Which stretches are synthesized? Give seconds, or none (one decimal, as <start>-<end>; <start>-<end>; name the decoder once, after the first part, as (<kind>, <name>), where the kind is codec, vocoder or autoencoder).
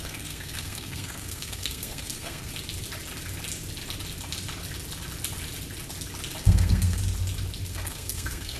0.0-2.5 (codec, SNAC); 6.4-7.0; 7.7-8.6